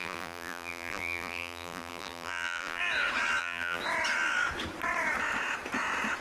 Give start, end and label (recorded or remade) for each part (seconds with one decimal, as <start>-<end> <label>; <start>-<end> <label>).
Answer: 0.0-2.8 remade; 2.8-3.4 recorded; 3.4-3.8 remade; 3.8-6.2 recorded